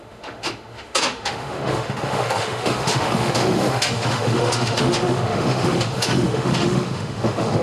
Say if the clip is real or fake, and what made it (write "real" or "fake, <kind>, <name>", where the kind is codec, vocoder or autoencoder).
fake, autoencoder, DAC-VAE